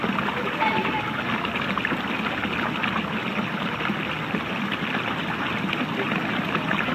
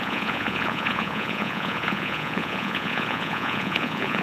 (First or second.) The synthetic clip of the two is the second